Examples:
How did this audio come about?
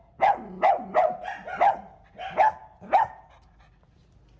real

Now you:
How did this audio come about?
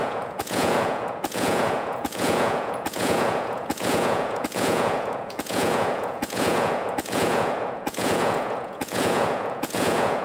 fake